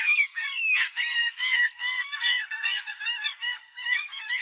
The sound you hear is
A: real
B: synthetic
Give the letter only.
B